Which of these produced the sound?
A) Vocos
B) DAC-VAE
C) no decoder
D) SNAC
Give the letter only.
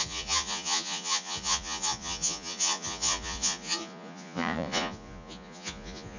A